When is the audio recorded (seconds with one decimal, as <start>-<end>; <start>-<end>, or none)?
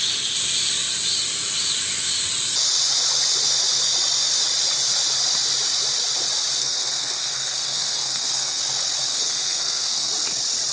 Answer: 0.0-6.6; 8.6-9.0; 10.1-10.7